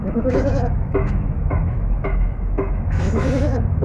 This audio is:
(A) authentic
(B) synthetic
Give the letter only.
B